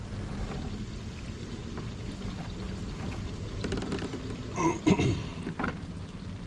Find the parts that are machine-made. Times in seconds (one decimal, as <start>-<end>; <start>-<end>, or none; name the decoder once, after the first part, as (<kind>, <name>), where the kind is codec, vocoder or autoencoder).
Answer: 0.0-6.5 (vocoder, BigVGAN v2)